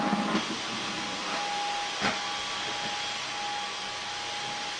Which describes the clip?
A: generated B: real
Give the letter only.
B